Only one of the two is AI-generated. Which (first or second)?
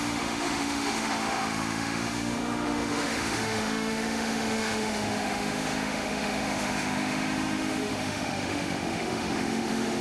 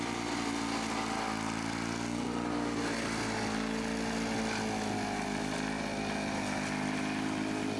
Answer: first